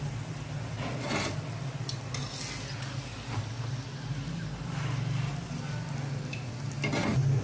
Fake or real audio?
real